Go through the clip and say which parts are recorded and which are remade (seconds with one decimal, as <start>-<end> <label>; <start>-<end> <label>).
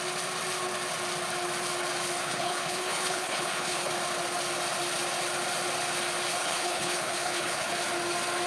0.0-2.2 recorded; 2.2-3.9 remade; 3.9-6.4 recorded; 6.4-7.8 remade; 7.8-8.5 recorded